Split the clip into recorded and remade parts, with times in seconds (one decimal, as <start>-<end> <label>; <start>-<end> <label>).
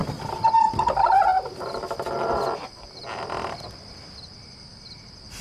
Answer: 0.0-5.4 recorded